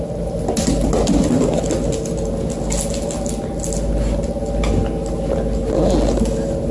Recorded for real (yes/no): yes